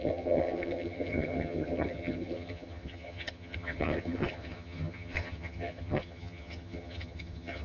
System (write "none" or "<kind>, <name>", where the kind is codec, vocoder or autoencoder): vocoder, HiFi-GAN